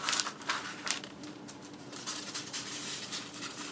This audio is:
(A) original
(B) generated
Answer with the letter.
B